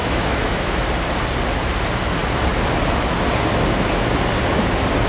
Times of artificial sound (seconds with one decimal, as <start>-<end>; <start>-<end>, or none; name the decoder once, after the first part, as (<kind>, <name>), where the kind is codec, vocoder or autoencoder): 0.0-0.8 (autoencoder, DAC-VAE)